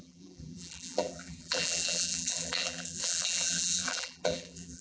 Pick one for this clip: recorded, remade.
remade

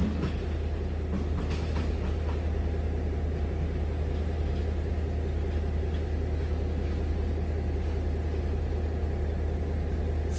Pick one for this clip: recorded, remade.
recorded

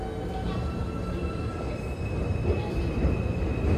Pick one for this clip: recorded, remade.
recorded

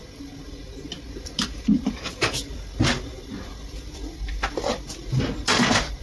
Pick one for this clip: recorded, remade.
recorded